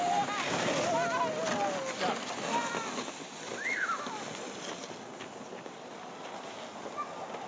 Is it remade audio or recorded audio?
recorded